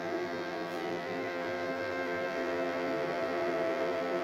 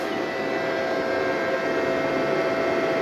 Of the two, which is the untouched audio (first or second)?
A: second